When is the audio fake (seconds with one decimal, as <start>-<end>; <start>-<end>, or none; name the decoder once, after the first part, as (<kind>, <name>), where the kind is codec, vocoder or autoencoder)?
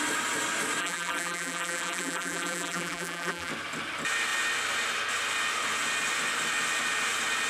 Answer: 0.8-3.5 (vocoder, BigVGAN v2)